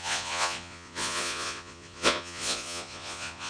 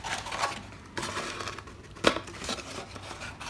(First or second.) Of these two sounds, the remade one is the first